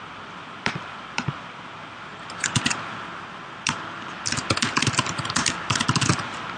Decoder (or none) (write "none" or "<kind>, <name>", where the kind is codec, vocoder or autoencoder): none